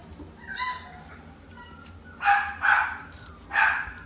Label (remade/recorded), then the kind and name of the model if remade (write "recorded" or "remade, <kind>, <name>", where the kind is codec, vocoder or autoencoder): recorded